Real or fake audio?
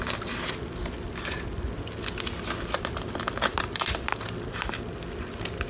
real